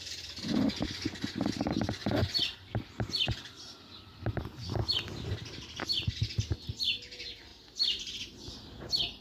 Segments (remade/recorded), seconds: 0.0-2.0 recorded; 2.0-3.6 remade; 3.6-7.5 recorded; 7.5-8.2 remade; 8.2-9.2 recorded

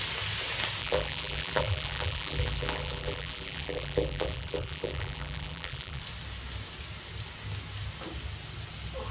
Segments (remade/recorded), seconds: 0.0-0.8 recorded; 0.8-6.0 remade; 6.0-9.1 recorded

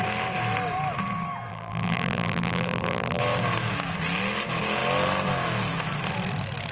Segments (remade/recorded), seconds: 0.0-1.5 recorded; 1.5-3.2 remade; 3.2-6.7 recorded

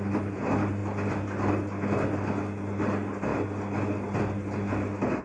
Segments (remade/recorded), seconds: 0.0-5.2 recorded

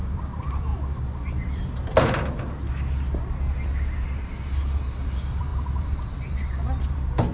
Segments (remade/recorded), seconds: 0.0-0.7 remade; 0.7-5.1 recorded; 5.1-7.3 remade

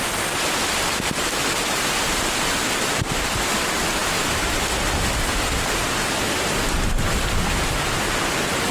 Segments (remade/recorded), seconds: 0.0-8.7 remade